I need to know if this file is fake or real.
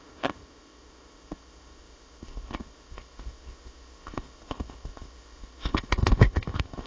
fake